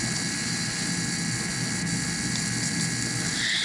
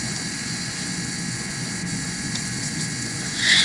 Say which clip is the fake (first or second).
second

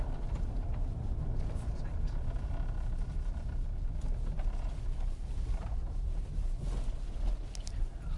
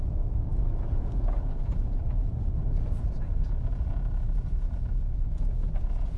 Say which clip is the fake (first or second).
second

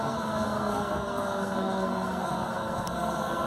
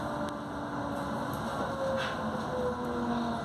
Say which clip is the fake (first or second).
first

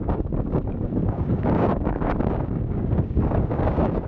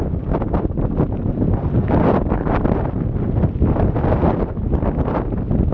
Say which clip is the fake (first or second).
first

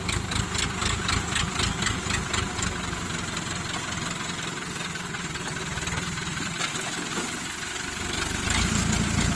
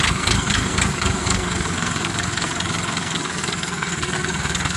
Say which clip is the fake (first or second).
second